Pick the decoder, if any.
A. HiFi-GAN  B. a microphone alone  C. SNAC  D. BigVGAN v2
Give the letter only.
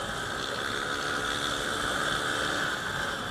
B